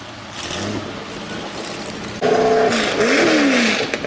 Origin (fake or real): real